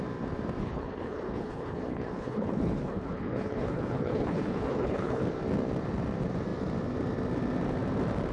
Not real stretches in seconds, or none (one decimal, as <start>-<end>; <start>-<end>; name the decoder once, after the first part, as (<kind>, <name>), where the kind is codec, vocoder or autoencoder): 0.6-5.2 (codec, HILCodec)